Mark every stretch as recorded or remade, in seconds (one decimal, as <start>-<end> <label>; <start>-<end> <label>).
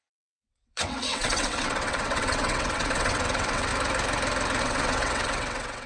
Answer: 0.0-3.7 remade; 3.7-4.6 recorded; 4.6-5.9 remade